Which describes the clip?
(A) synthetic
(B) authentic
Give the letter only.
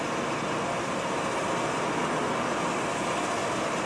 B